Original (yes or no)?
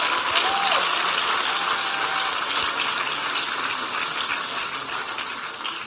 yes